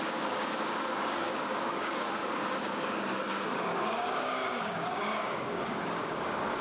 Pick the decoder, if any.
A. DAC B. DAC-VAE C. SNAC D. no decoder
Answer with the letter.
A